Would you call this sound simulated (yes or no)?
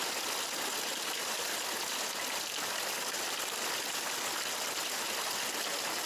no